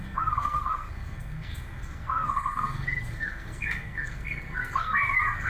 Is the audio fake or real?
fake